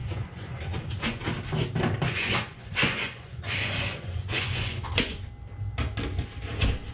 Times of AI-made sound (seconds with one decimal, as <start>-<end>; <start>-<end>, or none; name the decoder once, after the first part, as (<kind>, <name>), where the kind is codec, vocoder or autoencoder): 0.0-1.2 (vocoder, Vocos); 2.1-5.2